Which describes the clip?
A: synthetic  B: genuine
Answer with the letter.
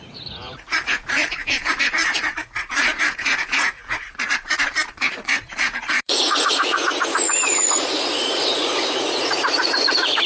A